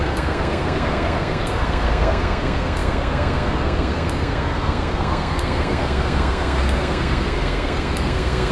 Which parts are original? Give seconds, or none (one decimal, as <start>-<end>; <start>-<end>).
none

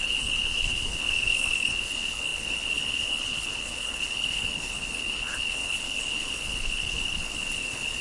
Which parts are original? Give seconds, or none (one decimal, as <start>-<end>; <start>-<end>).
none

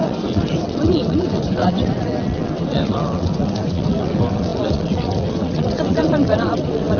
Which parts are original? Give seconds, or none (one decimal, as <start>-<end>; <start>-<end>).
none

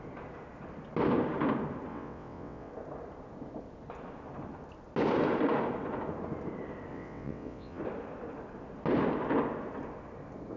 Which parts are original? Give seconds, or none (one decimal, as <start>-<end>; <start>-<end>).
0.0-1.9; 2.7-6.9; 7.8-10.6

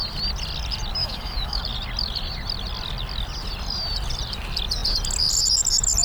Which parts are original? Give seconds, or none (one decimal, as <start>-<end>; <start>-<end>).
0.0-1.0; 1.6-6.0

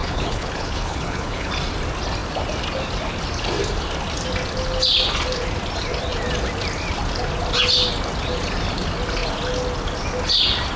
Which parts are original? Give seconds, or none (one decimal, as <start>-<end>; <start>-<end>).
1.5-10.8

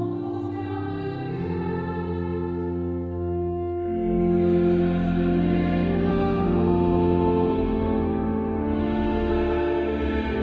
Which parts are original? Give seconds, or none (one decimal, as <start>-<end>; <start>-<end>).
0.0-6.1; 9.3-10.4

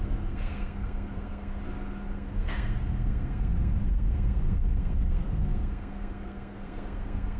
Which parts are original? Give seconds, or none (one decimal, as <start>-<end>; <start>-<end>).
1.6-2.1